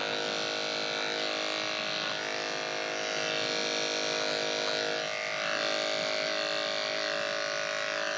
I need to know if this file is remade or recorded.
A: recorded